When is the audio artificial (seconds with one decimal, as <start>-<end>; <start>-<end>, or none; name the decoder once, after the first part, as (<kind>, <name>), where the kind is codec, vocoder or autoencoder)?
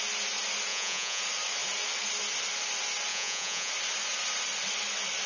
0.7-1.2 (vocoder, Vocos); 3.1-3.7